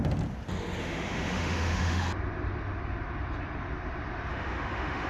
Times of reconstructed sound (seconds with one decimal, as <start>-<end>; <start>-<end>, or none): 0.8-2.0; 4.3-5.1